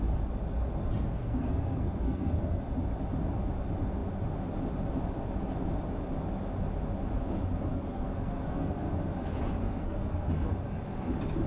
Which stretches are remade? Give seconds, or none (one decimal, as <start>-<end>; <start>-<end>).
1.2-2.6; 7.7-8.9; 9.6-10.3